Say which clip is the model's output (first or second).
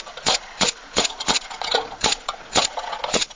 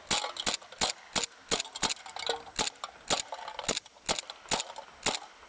first